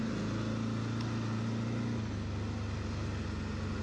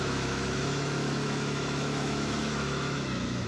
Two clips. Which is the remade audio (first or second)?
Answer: second